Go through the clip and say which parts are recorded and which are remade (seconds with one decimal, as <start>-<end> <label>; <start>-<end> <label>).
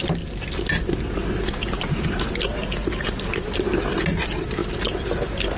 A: 0.0-1.6 recorded; 1.6-2.2 remade; 2.2-2.6 recorded; 2.6-3.5 remade; 3.5-5.6 recorded